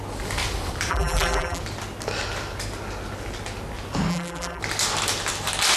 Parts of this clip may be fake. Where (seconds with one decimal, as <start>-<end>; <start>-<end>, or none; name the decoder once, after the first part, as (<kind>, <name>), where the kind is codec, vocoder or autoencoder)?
0.9-1.6 (vocoder, BigVGAN v2); 4.1-4.6